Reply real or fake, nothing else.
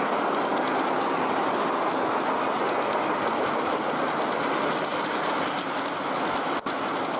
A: real